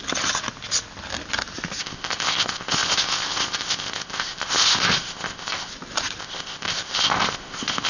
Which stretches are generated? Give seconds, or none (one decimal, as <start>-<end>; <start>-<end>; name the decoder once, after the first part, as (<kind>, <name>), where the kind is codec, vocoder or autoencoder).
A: 1.8-5.7 (codec, ZipCodec); 6.2-7.9